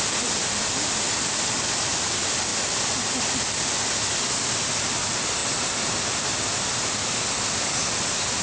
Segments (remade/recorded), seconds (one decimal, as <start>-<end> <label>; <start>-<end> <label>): 0.0-0.4 recorded; 0.4-2.1 remade; 2.1-2.5 recorded; 2.5-4.2 remade; 4.2-8.4 recorded